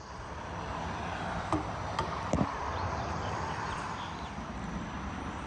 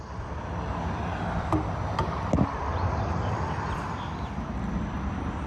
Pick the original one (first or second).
second